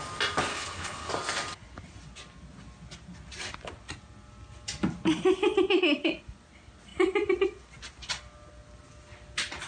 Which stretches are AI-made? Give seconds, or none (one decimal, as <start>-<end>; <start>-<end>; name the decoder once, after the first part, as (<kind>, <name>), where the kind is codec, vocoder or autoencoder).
0.5-1.1 (codec, HILCodec)